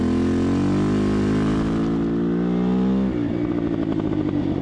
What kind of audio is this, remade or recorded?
recorded